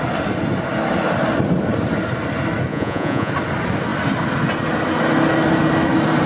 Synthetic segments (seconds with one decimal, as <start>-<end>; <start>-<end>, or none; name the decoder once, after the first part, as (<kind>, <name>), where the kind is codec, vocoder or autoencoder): 2.7-3.3 (vocoder, Vocos)